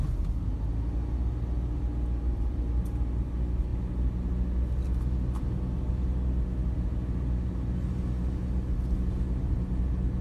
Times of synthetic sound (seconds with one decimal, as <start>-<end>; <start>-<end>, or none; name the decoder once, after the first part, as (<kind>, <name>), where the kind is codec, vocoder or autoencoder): none